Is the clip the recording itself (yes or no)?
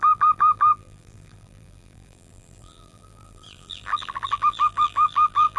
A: no